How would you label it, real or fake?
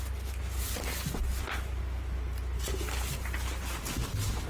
real